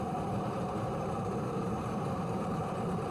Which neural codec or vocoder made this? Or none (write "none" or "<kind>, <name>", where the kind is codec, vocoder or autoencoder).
vocoder, BigVGAN v2